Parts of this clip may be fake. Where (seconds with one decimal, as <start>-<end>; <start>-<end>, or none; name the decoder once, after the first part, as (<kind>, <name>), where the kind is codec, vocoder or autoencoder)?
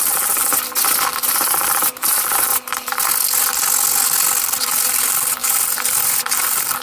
0.0-0.5 (vocoder, BigVGAN v2); 1.3-2.5; 4.6-6.8